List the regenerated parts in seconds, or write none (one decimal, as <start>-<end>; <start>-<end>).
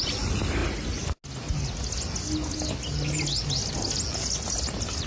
none